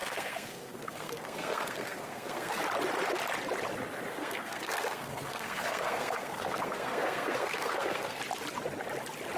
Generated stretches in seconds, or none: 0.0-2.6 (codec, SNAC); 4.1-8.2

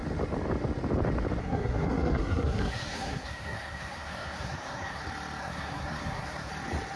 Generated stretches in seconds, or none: 1.4-5.0 (codec, SNAC); 5.4-6.5

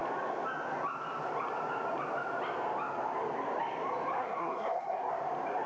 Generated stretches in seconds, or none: 4.2-5.1 (codec, SNAC)

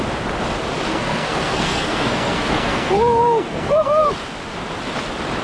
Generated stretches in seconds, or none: 0.9-4.1 (codec, SNAC)

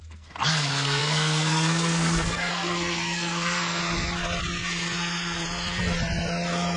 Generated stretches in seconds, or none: 0.0-3.8 (codec, SNAC)

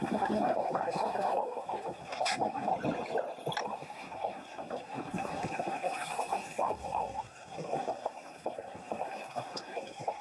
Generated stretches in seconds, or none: 0.0-2.7 (codec, SNAC); 3.6-10.2